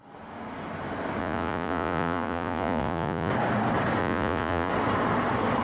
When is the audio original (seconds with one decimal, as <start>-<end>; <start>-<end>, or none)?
0.0-1.2; 3.3-4.0; 4.7-5.6

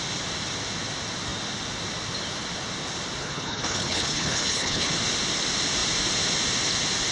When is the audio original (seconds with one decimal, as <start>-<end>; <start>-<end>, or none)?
0.0-3.2; 4.9-7.1

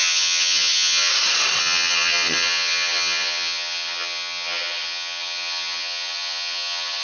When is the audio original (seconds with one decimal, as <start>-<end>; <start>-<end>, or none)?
1.1-1.6

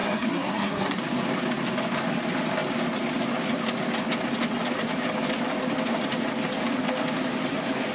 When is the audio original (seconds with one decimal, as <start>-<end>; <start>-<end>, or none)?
1.0-7.9